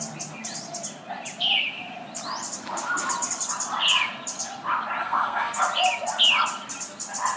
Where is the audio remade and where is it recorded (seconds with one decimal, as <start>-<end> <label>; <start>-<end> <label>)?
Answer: 0.0-5.0 recorded; 5.0-5.6 remade; 5.6-7.4 recorded